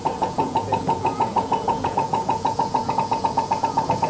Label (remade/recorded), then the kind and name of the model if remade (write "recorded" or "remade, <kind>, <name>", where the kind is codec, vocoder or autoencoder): remade, vocoder, Vocos